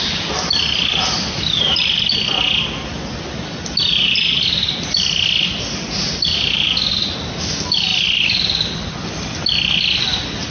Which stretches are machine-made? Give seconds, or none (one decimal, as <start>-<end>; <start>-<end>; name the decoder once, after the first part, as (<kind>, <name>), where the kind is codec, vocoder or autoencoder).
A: none